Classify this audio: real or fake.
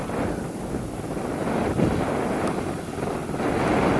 real